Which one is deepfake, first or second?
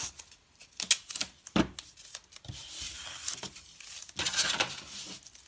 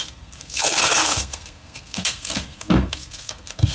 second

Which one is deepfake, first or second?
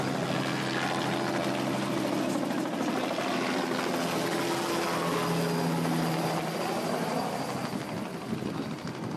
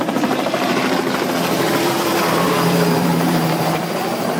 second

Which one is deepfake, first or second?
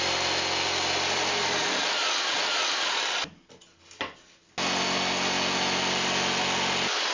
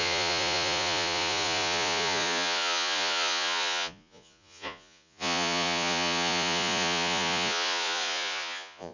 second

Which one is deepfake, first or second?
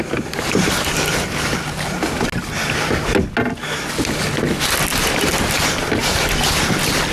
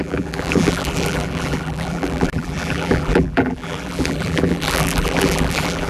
second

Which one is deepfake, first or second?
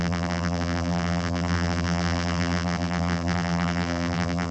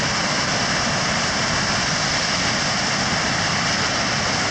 first